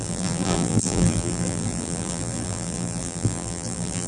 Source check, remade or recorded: remade